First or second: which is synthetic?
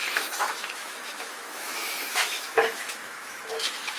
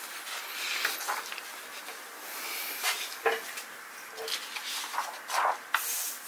first